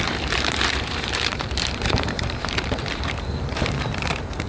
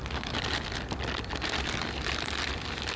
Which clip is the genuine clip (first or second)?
second